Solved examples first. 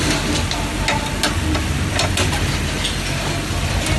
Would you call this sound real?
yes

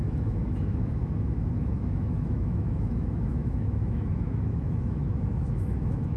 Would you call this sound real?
no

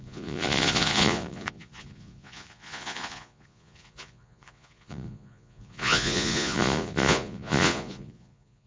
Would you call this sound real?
no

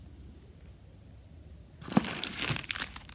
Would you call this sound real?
yes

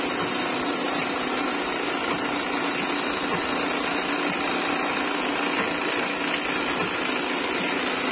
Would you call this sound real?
yes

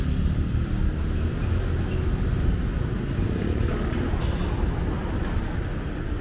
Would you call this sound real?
yes